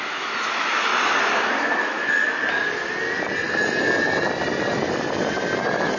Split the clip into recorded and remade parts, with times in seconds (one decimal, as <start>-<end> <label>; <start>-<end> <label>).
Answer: 0.0-0.9 remade; 0.9-1.8 recorded; 1.8-2.2 remade; 2.2-6.0 recorded